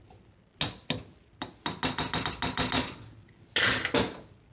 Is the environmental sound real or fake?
real